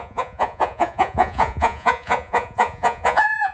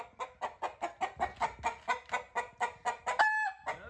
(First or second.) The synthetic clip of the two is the first